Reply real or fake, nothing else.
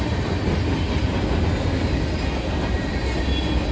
real